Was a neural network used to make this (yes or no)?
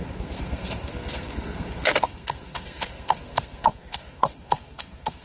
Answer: yes